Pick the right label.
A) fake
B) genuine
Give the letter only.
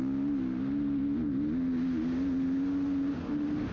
B